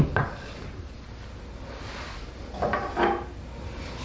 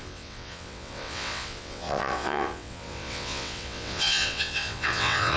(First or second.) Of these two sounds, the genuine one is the first